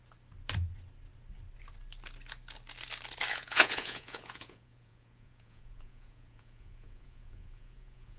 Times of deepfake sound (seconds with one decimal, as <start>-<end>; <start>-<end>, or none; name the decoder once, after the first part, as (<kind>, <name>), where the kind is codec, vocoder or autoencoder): 3.3-8.2 (vocoder, Vocos)